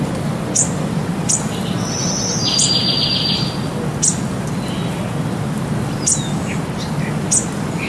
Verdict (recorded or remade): recorded